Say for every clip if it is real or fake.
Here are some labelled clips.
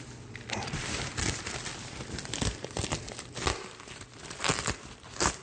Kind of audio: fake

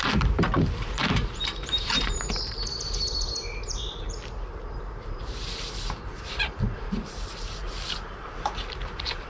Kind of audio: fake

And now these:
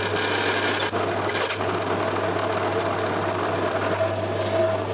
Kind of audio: real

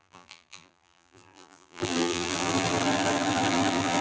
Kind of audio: fake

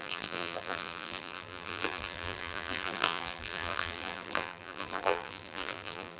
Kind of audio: fake